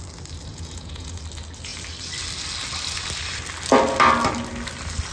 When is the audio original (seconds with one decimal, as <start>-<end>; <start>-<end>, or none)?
0.0-0.5; 1.2-5.1